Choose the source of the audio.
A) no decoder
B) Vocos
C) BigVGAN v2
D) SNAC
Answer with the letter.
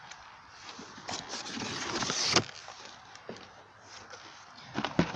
A